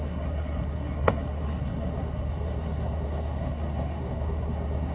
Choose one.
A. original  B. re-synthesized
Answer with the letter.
B